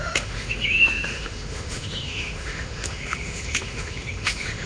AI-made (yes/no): yes